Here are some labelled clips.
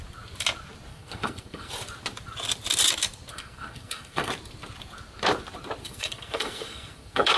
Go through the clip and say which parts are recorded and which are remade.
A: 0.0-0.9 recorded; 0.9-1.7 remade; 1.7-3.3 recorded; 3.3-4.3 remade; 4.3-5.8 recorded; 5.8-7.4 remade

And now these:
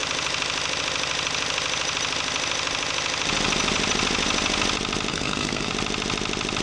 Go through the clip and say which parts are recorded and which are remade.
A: 0.0-5.1 recorded; 5.1-5.7 remade; 5.7-6.6 recorded

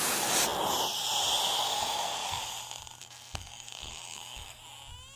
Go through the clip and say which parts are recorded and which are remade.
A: 0.0-1.7 recorded; 1.7-2.4 remade; 2.4-3.0 recorded; 3.0-4.6 remade; 4.6-5.2 recorded

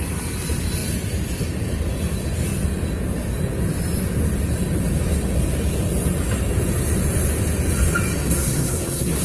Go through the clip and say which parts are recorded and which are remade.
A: 0.0-8.2 recorded; 8.2-9.2 remade

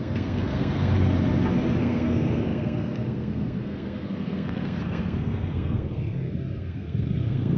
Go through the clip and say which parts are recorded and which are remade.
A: 0.0-0.9 remade; 0.9-1.8 recorded; 1.8-7.6 remade

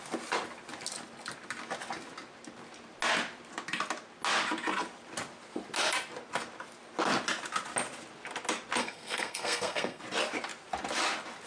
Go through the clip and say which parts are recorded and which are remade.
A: 0.0-8.8 recorded; 8.8-10.0 remade; 10.0-11.5 recorded

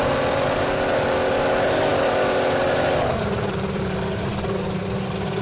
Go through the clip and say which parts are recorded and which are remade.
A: 0.0-5.4 recorded